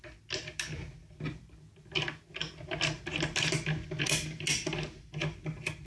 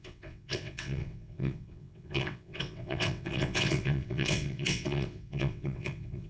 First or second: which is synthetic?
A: second